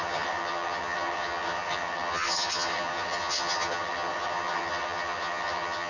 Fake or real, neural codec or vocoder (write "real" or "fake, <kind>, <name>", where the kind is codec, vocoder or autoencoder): fake, vocoder, HiFi-GAN